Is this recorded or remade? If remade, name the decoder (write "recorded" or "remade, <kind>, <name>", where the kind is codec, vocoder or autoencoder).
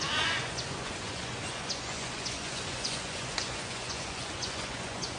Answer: remade, vocoder, Vocos